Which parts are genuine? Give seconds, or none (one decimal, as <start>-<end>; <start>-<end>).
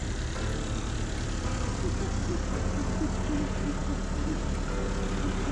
2.8-5.5